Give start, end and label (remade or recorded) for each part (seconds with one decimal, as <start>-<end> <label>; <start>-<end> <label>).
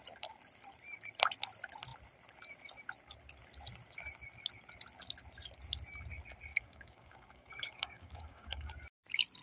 0.0-6.5 recorded; 6.5-8.7 remade; 8.7-9.4 recorded